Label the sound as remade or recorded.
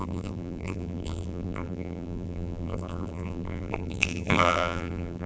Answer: remade